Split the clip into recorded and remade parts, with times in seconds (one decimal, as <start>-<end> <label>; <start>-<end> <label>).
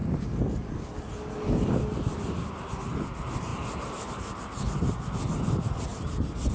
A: 0.0-6.5 recorded